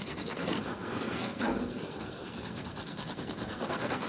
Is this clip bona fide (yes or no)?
no